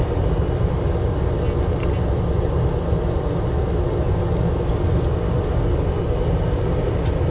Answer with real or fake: real